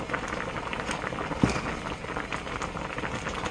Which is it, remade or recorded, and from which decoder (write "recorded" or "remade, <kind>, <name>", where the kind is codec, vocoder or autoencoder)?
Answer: recorded